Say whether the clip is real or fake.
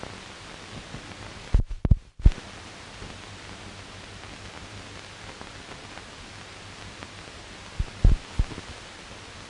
real